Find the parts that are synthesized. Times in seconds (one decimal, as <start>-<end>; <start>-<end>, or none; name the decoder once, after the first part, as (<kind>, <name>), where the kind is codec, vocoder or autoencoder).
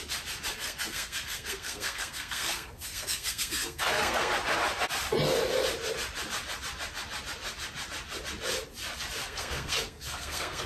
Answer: 0.5-4.3 (codec, SNAC); 9.2-10.7